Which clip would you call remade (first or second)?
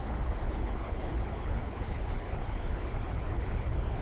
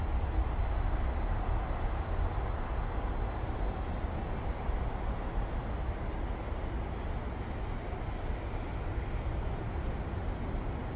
first